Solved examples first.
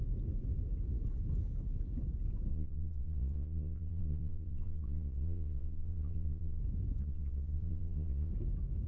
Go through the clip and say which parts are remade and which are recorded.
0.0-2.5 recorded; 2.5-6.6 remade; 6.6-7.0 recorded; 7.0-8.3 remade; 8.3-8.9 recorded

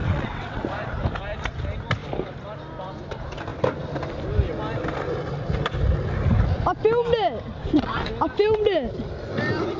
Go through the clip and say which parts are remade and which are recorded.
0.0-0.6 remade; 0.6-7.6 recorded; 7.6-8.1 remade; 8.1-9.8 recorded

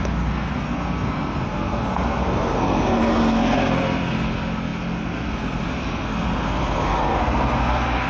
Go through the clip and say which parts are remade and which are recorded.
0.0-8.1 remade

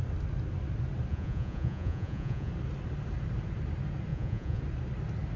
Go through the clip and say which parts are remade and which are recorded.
0.0-1.1 recorded; 1.1-2.5 remade; 2.5-4.1 recorded; 4.1-4.6 remade; 4.6-5.4 recorded

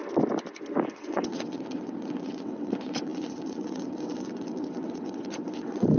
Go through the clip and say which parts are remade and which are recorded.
0.0-0.9 recorded; 0.9-6.0 remade

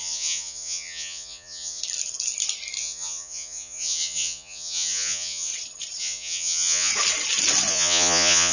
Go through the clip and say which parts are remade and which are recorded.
0.0-1.8 remade; 1.8-2.8 recorded; 2.8-5.5 remade; 5.5-6.0 recorded; 6.0-6.9 remade; 6.9-7.7 recorded; 7.7-8.5 remade

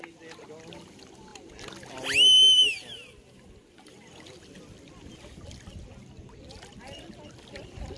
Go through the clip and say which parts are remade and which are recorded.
0.0-8.0 recorded